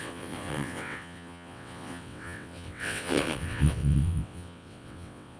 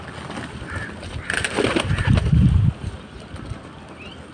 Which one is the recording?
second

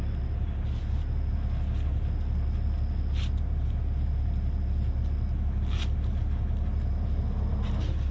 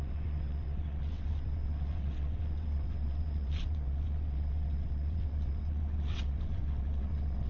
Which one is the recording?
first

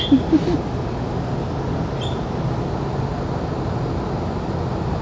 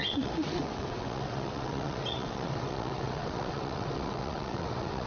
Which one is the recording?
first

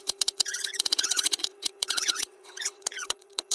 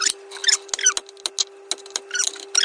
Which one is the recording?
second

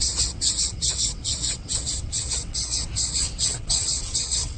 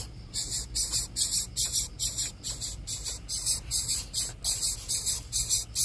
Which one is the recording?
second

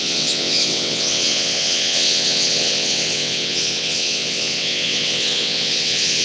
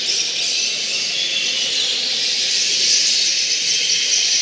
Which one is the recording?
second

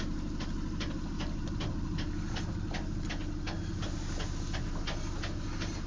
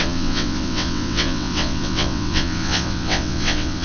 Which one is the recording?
first